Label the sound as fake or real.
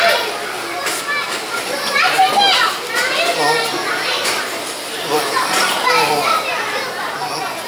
real